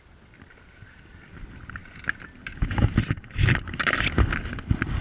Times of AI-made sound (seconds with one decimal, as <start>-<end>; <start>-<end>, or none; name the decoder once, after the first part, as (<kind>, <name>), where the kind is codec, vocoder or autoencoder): none